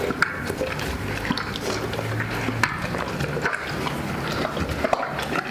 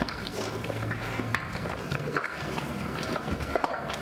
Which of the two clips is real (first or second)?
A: first